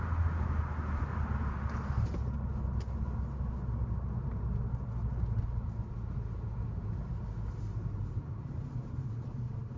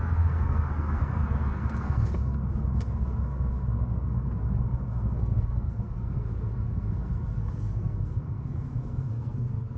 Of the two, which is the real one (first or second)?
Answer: first